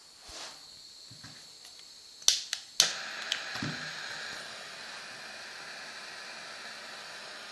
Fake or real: real